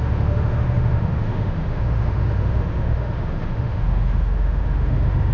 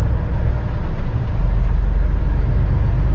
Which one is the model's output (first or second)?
first